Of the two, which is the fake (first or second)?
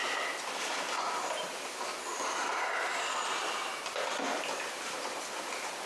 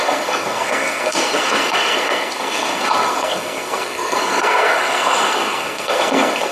second